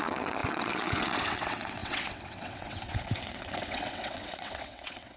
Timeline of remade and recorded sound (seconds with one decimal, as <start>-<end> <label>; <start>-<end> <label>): 0.0-5.2 remade